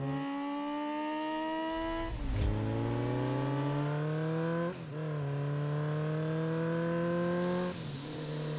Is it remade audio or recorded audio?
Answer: recorded